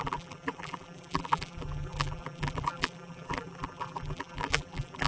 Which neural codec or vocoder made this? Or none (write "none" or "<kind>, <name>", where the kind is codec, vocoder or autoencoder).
vocoder, BigVGAN v2